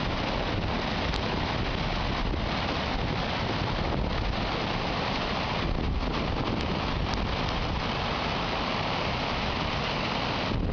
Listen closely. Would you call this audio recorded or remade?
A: recorded